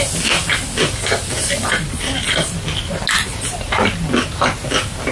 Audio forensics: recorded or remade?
recorded